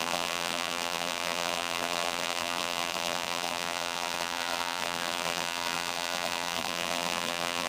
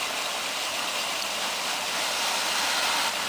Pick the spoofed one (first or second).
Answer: first